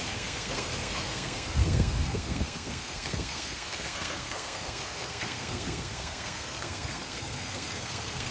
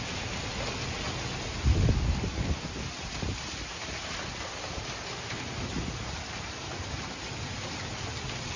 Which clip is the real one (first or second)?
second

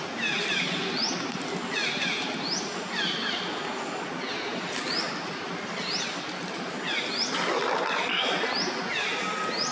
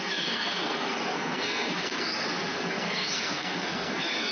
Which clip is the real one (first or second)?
first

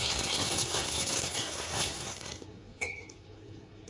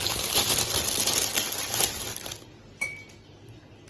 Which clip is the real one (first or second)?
second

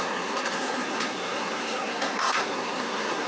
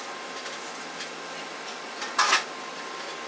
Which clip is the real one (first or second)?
second